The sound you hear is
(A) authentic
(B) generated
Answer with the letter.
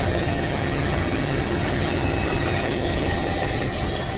B